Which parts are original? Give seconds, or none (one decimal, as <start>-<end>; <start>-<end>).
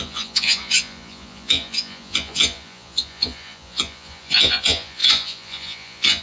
none